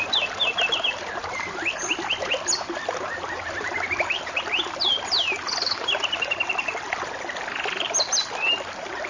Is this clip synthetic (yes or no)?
no